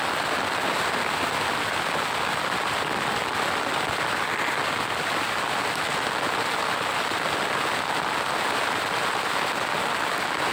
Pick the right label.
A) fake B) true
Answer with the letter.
B